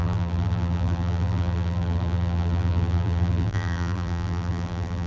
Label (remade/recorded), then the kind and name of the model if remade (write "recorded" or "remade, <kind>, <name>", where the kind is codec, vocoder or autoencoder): remade, vocoder, BigVGAN v2